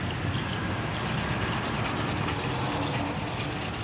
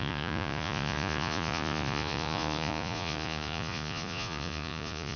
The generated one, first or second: second